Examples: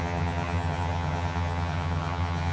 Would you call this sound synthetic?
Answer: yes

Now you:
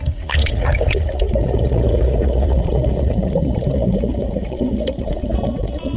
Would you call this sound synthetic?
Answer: yes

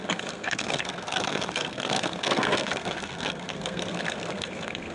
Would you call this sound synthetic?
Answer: yes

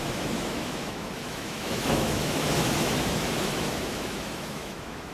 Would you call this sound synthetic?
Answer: yes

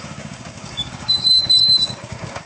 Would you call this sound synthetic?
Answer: yes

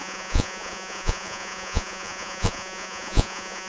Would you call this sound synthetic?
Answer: yes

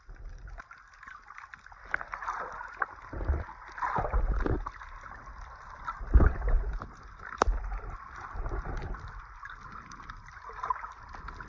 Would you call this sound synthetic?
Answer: no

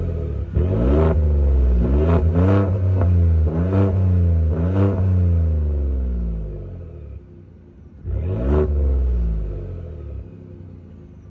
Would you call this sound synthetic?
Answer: no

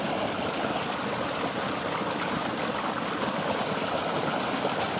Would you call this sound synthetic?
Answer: no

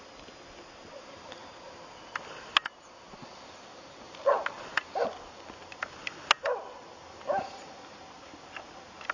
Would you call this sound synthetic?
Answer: no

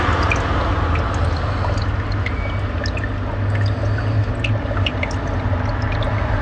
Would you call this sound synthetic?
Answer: no